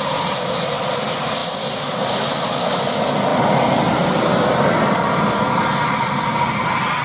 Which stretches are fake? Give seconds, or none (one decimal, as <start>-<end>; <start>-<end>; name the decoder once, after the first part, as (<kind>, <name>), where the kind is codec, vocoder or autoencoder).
none